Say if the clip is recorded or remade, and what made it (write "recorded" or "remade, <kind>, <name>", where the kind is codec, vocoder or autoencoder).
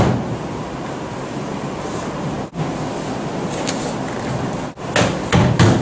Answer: recorded